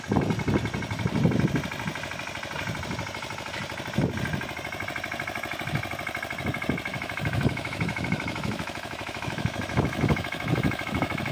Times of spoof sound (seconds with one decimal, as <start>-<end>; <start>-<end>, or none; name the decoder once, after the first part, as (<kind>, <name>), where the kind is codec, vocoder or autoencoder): 6.9-11.3 (autoencoder, DAC-VAE)